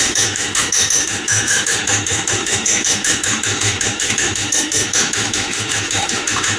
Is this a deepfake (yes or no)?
yes